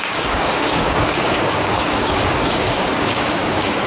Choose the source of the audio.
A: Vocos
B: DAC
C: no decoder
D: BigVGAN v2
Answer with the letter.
B